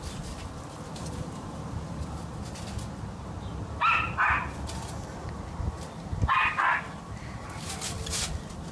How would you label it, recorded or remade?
recorded